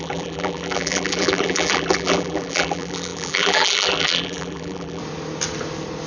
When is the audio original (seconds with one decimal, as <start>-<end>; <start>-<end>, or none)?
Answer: 5.0-6.1